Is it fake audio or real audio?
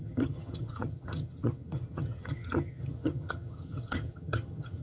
fake